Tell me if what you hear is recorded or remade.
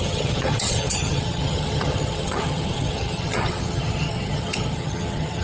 remade